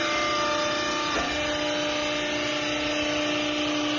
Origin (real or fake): real